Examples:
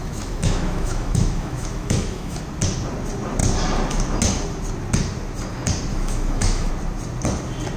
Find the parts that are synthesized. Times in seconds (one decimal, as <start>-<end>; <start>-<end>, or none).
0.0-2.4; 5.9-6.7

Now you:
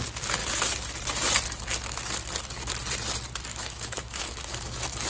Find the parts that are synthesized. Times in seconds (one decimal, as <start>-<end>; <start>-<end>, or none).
3.5-5.1

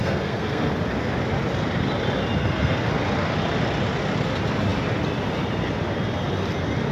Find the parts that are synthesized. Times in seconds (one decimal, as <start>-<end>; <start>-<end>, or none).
0.0-0.7; 2.4-2.9

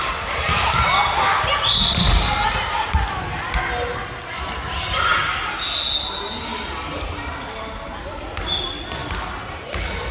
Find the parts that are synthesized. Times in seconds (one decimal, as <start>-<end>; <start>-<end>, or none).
none

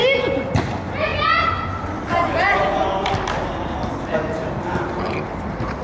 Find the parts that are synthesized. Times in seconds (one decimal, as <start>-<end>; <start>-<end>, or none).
none